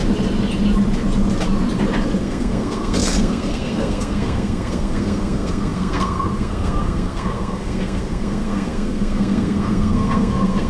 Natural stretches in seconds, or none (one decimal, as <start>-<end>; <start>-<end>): 0.0-2.2